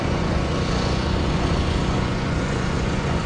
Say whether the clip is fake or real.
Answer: fake